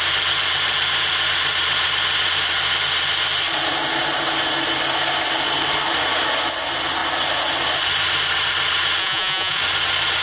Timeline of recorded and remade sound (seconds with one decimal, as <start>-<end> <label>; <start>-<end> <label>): 0.0-9.0 recorded; 9.0-9.6 remade; 9.6-10.2 recorded